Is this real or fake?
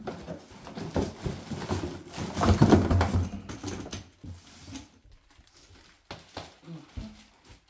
real